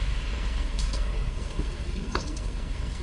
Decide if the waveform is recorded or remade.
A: remade